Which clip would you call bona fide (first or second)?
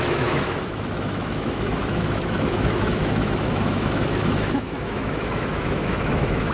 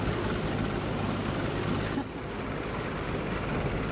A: second